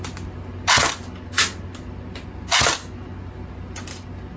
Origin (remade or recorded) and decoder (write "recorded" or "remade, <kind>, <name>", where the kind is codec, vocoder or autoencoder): recorded